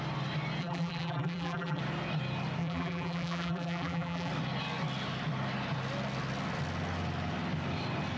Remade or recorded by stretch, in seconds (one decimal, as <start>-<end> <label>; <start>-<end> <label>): 0.0-0.6 recorded; 0.6-1.8 remade; 1.8-2.6 recorded; 2.6-4.3 remade; 4.3-8.2 recorded